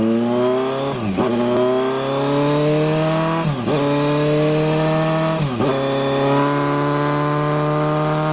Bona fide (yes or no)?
yes